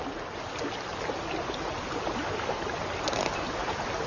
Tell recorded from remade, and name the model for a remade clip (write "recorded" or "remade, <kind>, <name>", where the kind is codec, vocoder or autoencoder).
recorded